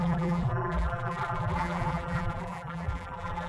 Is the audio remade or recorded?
remade